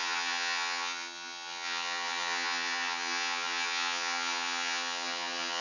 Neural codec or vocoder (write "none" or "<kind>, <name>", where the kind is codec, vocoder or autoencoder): vocoder, HiFi-GAN